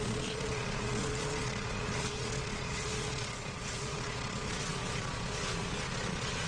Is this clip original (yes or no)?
no